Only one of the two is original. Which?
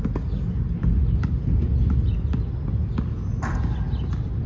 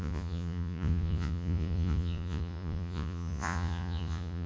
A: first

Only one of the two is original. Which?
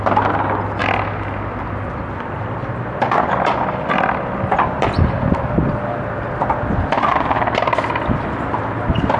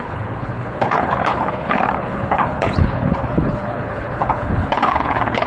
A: first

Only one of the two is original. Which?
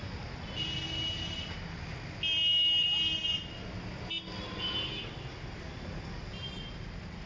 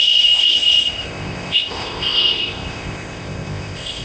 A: first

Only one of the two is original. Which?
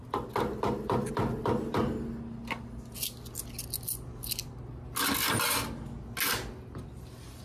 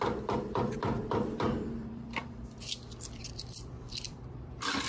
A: first